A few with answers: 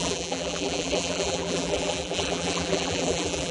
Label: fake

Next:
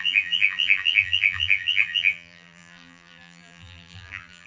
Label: fake